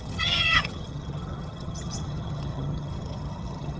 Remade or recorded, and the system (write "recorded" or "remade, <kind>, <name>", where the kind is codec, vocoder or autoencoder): remade, vocoder, HiFi-GAN